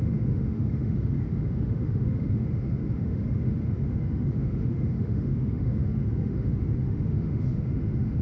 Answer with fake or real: fake